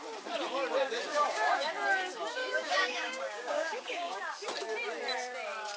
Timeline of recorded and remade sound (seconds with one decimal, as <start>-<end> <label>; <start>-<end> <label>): 0.0-1.1 recorded; 1.1-1.7 remade; 1.7-2.4 recorded; 2.4-4.2 remade; 4.2-5.8 recorded

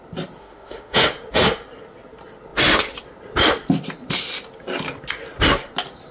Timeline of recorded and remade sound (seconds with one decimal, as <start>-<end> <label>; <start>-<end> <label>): 0.0-0.4 recorded; 0.4-1.1 remade; 1.1-6.1 recorded

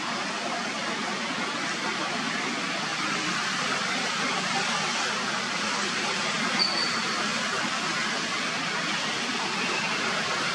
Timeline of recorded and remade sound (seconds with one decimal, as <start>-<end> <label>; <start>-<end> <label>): 0.0-10.5 recorded

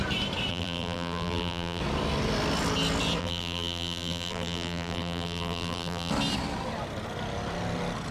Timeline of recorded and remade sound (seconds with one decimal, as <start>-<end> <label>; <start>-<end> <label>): 0.0-0.5 recorded; 0.5-1.8 remade; 1.8-3.2 recorded; 3.2-6.1 remade; 6.1-8.1 recorded